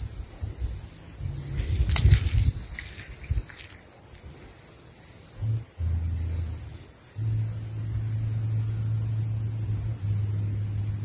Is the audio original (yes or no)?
yes